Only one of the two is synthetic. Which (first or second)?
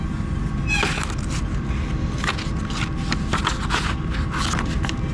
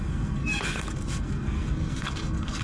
second